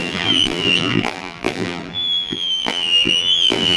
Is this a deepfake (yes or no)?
yes